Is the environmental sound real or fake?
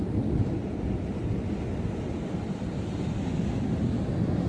real